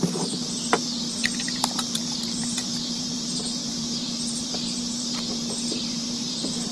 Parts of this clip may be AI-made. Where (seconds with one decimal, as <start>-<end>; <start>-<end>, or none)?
0.0-6.7